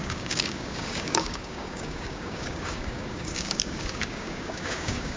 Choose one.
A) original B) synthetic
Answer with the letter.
B